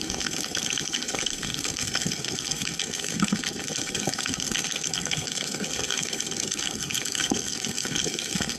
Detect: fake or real fake